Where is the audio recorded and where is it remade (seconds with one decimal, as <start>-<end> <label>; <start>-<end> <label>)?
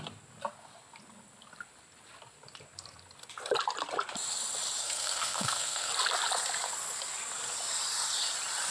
0.0-4.8 recorded; 4.8-5.9 remade; 5.9-8.7 recorded